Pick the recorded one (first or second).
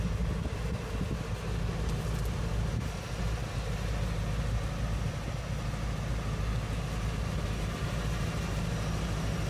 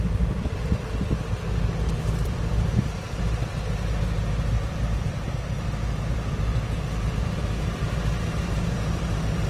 first